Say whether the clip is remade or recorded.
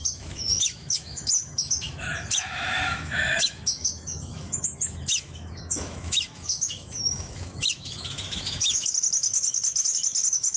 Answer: remade